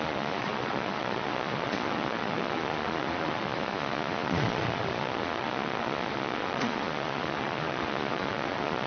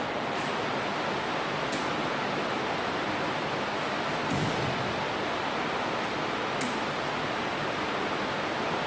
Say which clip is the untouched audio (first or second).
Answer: second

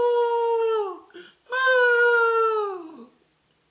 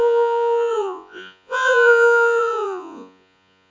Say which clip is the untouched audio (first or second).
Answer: first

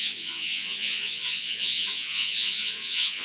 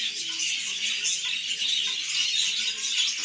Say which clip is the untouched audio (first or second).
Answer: second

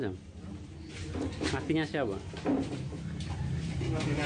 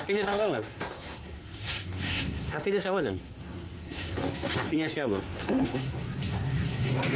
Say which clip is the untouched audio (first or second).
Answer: first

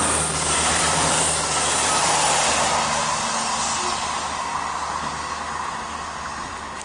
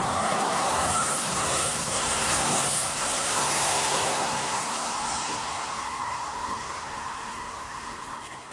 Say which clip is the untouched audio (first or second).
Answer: first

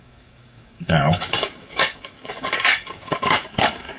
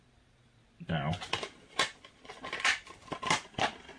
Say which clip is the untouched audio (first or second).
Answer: second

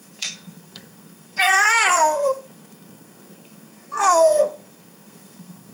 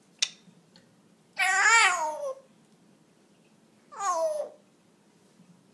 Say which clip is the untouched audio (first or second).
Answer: second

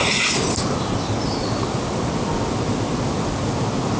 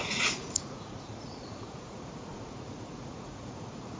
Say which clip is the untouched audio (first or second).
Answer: first